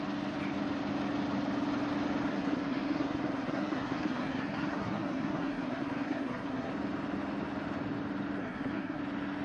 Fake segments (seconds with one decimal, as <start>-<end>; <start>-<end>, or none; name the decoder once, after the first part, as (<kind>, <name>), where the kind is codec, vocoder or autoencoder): 2.3-6.7 (codec, SNAC); 8.4-9.0

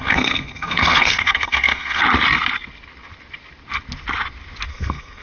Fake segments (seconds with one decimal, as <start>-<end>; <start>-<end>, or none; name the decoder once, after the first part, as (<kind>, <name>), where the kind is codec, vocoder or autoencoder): 0.0-2.0 (codec, SNAC); 4.7-5.2